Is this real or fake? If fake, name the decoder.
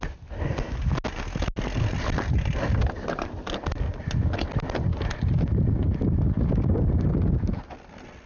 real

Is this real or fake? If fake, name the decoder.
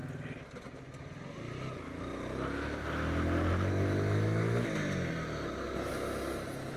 real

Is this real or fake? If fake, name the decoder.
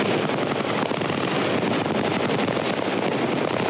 real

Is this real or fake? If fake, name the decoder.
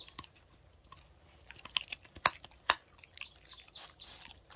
real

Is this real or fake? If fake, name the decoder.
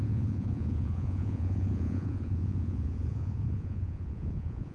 fake, vocoder, Vocos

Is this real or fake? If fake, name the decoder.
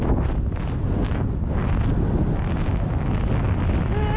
real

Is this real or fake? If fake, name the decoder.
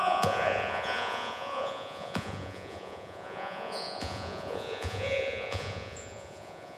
fake, vocoder, Vocos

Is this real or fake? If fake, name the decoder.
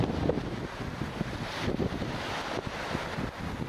real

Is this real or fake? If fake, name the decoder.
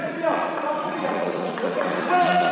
fake, vocoder, Vocos